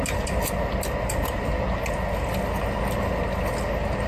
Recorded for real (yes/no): yes